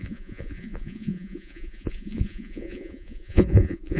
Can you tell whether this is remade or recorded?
remade